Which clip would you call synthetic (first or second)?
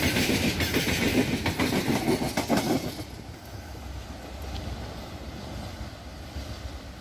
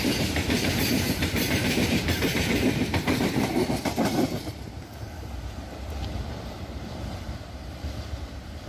second